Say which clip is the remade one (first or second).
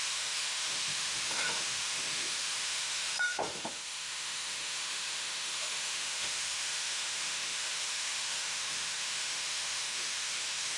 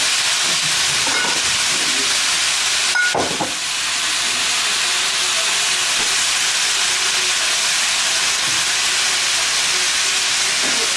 first